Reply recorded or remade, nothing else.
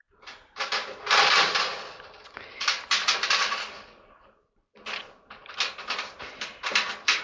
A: remade